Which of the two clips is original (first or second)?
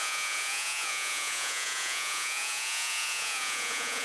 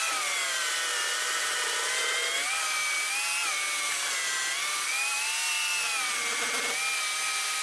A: second